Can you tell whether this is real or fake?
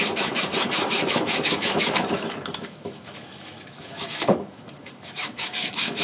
fake